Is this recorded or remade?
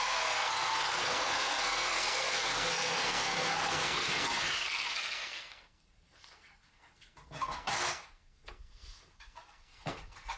remade